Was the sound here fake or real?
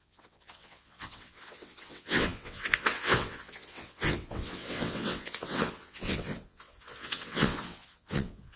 fake